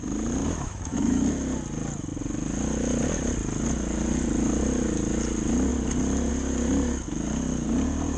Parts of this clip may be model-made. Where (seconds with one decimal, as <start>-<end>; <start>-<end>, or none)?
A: 0.4-1.2